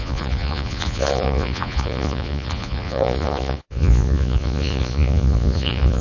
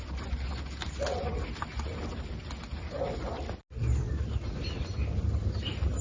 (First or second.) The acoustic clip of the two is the second